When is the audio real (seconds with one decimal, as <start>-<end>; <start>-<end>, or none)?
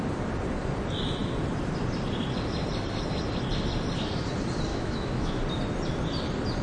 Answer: 0.0-4.7; 5.4-6.6